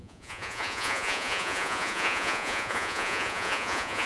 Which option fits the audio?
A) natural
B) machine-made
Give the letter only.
B